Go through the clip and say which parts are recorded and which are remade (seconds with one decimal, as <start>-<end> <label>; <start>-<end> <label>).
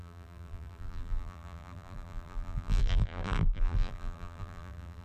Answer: 0.0-5.0 remade